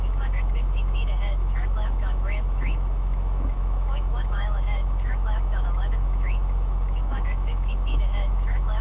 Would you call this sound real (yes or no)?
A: no